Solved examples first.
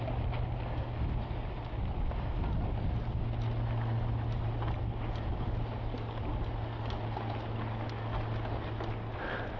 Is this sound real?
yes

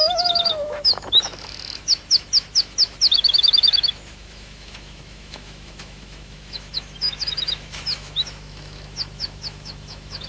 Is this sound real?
no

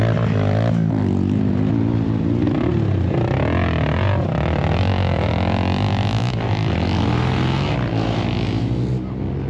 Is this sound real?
yes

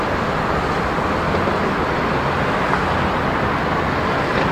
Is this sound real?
yes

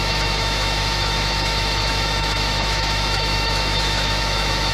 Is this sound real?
no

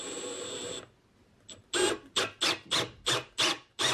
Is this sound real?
yes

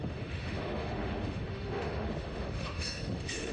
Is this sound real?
no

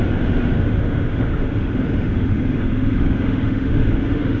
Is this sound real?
no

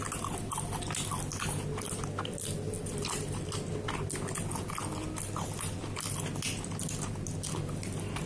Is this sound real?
yes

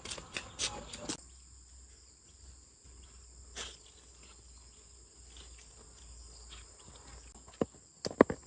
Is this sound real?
yes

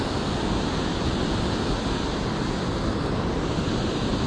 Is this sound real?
yes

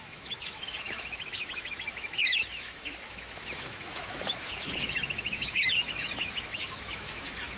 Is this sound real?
no